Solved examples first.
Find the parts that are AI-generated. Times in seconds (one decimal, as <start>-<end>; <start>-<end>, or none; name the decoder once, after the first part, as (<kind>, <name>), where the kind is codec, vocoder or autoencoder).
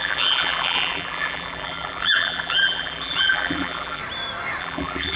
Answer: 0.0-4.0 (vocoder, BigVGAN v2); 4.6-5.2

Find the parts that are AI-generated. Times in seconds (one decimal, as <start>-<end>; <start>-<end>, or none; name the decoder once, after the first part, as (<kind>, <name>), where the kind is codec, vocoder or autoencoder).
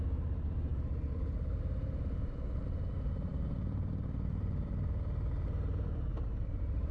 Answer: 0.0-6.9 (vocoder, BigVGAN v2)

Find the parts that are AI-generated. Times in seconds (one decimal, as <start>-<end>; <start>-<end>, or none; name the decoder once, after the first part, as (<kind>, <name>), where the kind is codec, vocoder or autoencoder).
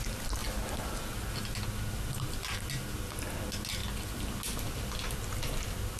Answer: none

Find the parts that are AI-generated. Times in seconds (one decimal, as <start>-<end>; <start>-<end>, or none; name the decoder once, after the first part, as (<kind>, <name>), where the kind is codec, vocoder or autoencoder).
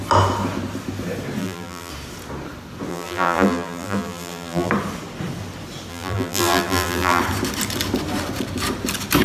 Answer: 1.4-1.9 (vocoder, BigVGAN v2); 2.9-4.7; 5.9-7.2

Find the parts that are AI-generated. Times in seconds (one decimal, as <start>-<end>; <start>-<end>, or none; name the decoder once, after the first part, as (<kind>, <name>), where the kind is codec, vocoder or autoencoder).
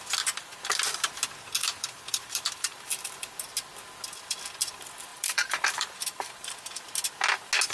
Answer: 1.6-2.9 (vocoder, BigVGAN v2); 5.1-6.5